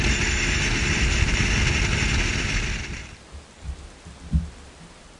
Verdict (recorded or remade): recorded